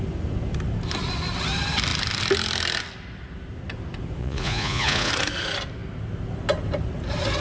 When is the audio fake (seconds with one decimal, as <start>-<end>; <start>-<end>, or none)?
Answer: 4.2-5.1